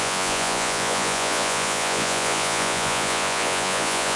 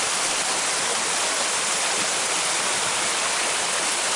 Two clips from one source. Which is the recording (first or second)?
second